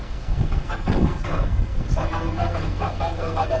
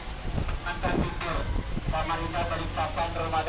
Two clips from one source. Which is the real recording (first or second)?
second